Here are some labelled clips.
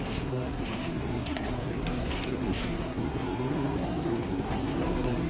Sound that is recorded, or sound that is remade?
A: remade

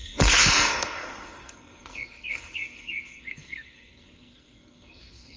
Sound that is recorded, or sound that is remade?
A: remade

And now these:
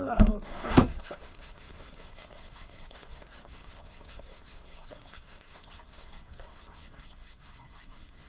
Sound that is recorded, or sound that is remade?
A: remade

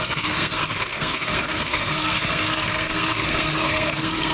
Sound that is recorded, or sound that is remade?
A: remade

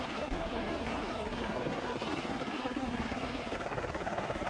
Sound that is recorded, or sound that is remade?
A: remade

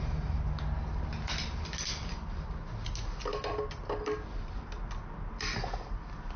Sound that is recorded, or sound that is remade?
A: recorded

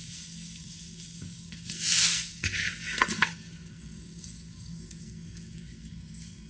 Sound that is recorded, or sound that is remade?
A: remade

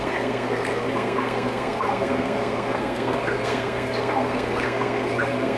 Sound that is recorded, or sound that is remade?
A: remade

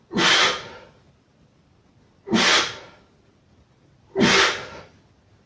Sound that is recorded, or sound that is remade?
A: recorded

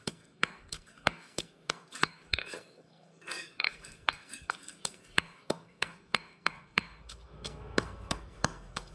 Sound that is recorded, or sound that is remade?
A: remade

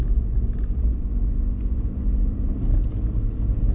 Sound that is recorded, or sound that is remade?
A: recorded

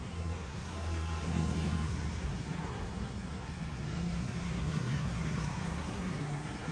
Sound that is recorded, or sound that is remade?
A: remade